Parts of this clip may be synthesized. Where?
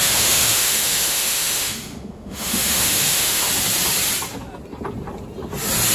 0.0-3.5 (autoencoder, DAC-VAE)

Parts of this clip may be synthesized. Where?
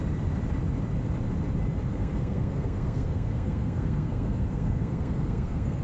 1.9-5.8 (codec, SNAC)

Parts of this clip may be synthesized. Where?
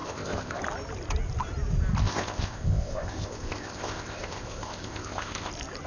0.0-0.6 (codec, ZipCodec); 2.0-5.5